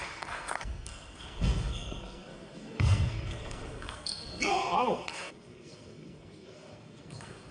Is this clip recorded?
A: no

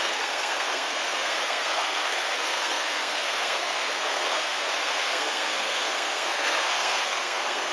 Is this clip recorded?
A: no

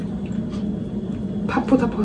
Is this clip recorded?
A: yes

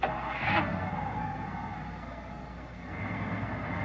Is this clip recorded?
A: no